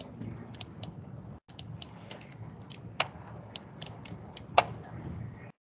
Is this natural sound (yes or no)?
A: yes